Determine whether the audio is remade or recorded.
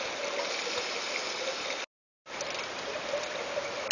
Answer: recorded